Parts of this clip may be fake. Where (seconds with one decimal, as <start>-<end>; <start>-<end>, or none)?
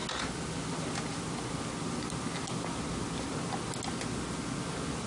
none